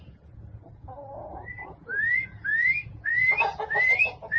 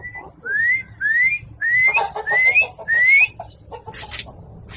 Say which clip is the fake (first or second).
first